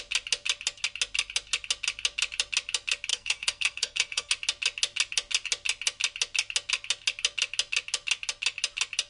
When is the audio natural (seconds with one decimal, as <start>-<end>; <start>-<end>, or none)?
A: 0.0-3.1; 4.3-9.1

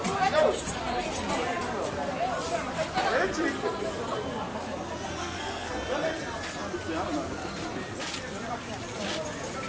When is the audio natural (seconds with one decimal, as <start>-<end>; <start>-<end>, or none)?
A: 0.0-5.2; 5.7-9.7

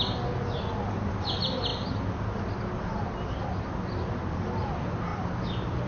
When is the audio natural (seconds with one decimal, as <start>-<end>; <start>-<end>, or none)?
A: 0.0-5.9

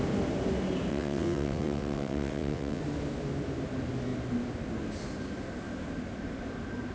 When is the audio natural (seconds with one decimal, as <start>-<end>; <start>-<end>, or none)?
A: 0.0-0.9; 2.8-6.9

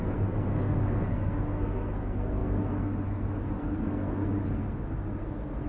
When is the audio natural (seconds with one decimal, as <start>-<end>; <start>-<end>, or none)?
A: none

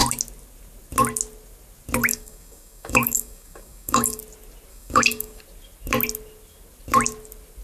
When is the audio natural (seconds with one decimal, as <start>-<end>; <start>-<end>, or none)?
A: 0.0-2.1; 4.2-4.7; 5.4-7.6